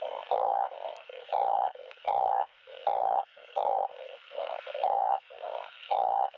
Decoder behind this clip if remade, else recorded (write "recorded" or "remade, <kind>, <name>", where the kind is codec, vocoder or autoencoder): remade, codec, SNAC